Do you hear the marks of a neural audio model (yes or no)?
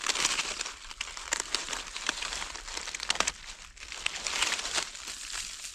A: no